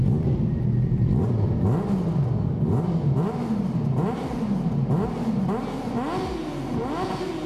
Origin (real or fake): real